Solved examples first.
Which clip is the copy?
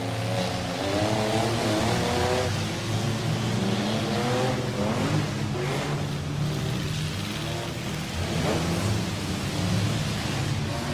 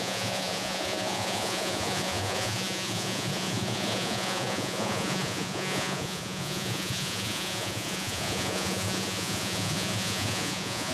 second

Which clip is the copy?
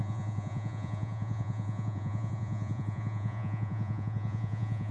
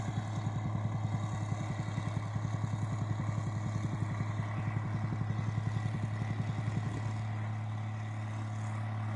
first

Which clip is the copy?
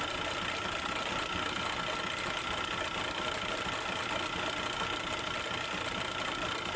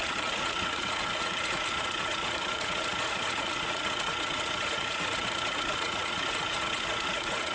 second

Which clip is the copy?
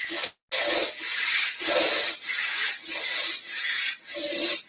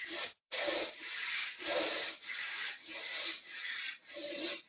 second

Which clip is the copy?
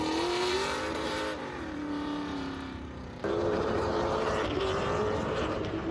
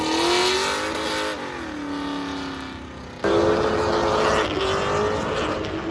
first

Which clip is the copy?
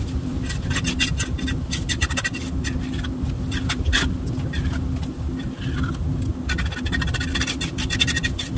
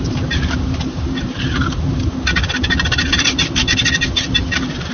second